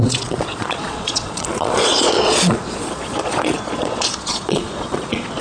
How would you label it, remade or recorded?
remade